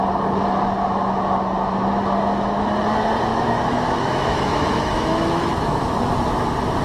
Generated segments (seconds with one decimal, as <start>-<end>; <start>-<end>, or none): 3.3-6.0